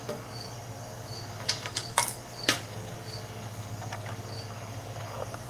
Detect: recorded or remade remade